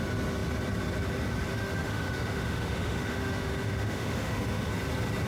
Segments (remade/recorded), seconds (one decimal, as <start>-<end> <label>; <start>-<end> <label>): 0.0-1.5 recorded; 1.5-4.7 remade; 4.7-5.3 recorded